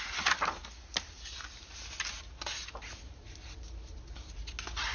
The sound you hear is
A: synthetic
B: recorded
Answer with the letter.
B